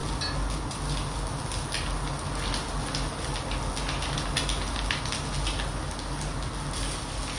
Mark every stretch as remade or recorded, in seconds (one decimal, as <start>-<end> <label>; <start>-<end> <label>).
0.0-7.4 recorded